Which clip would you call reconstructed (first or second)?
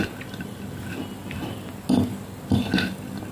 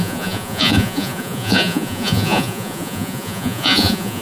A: second